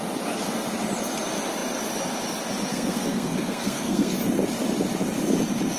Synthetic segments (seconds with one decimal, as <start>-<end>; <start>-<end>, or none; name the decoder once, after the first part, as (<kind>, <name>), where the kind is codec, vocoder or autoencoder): 2.7-4.1 (codec, SNAC)